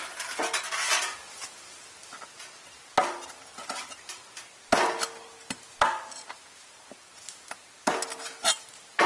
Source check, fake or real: real